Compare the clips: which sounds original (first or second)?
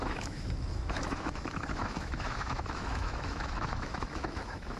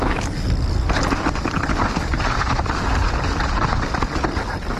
second